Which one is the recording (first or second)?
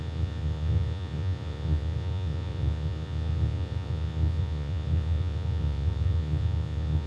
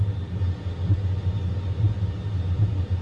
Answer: second